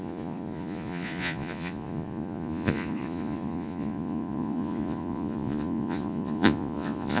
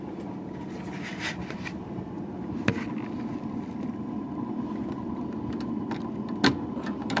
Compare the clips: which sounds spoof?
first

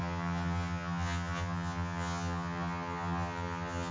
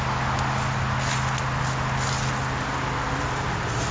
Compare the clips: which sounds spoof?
first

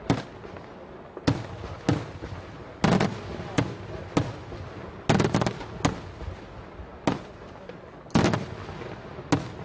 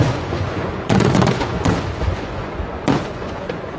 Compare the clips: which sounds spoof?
second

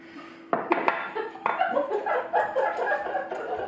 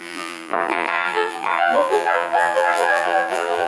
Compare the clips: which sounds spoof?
second